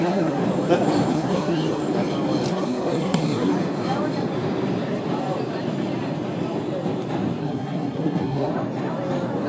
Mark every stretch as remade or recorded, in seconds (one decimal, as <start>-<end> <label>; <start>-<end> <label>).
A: 0.0-0.4 remade; 0.4-1.1 recorded; 1.1-1.8 remade; 1.8-2.5 recorded; 2.5-3.5 remade; 3.5-7.4 recorded; 7.4-8.5 remade; 8.5-9.5 recorded